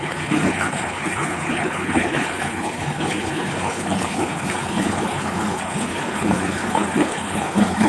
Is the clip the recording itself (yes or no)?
no